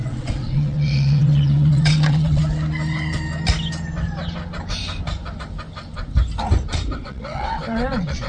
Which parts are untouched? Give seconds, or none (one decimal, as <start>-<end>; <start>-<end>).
2.4-7.0